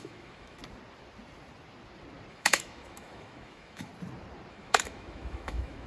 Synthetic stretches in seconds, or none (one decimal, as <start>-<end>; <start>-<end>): 0.0-0.6; 2.3-3.9; 4.5-5.9